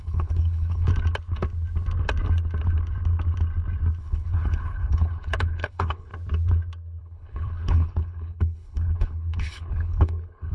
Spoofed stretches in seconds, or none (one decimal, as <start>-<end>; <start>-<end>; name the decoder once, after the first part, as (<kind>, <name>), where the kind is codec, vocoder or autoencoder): 0.0-0.9 (codec, HILCodec); 4.0-6.1; 7.0-10.5